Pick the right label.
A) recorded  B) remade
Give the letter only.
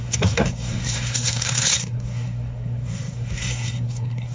B